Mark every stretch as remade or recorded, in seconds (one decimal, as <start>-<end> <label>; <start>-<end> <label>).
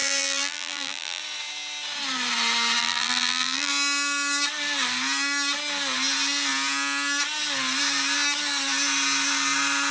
0.0-1.2 remade; 1.2-2.8 recorded; 2.8-3.7 remade; 3.7-9.9 recorded